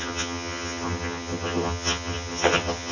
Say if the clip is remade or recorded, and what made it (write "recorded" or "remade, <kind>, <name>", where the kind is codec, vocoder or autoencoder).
remade, vocoder, HiFi-GAN